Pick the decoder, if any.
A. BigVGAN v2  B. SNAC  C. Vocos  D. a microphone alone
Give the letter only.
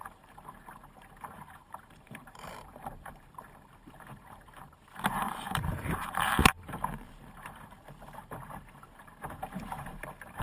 A